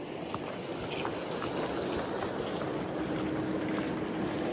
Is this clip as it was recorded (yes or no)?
yes